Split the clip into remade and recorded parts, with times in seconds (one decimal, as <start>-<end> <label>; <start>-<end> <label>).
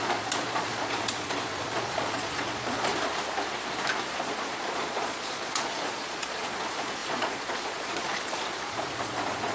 0.0-2.9 remade; 2.9-4.1 recorded; 4.1-9.5 remade